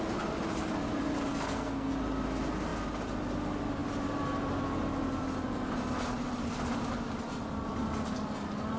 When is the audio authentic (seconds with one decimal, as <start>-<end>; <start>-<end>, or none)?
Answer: 0.0-1.3; 1.9-8.8